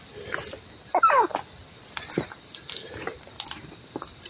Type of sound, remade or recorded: recorded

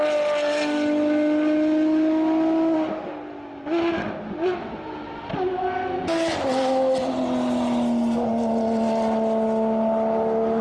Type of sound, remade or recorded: recorded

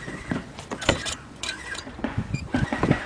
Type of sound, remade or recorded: remade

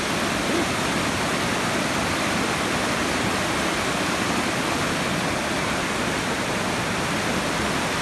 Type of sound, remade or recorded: recorded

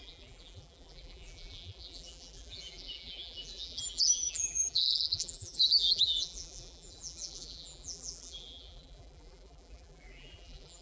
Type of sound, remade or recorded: remade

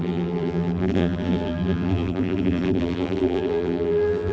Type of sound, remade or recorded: remade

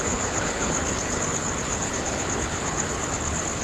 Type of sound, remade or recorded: remade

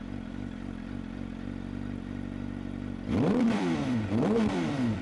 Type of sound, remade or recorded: remade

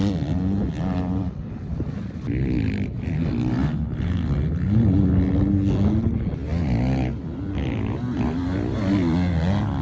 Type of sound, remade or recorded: recorded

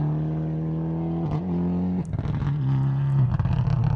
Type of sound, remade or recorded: recorded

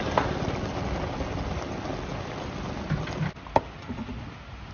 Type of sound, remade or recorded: recorded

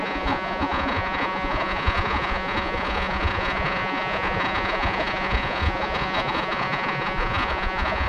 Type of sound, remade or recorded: remade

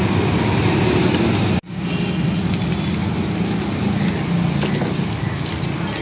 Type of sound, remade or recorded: recorded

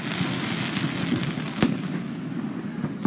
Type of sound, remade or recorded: recorded